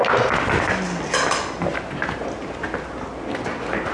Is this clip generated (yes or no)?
no